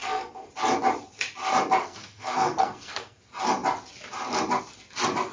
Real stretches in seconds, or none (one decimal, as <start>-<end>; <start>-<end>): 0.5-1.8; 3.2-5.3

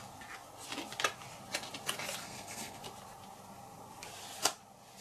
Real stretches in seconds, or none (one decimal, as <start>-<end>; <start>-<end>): 0.0-2.2; 2.8-5.0

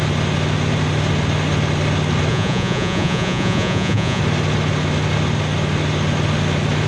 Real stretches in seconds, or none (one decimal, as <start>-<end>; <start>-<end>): 0.0-2.3; 4.2-6.9

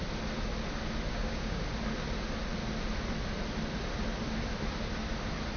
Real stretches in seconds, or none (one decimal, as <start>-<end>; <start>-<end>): 0.0-1.1; 1.6-5.6

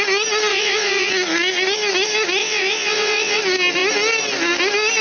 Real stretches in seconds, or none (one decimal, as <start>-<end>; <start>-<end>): 0.0-0.5; 1.1-2.4; 3.4-5.0